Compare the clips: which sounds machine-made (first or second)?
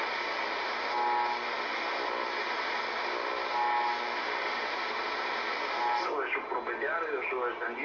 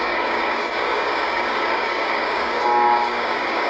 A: second